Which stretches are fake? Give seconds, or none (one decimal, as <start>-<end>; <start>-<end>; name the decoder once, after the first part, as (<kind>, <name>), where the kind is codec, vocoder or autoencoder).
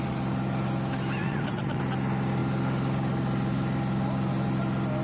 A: 1.2-1.8 (vocoder, WaveNeXt)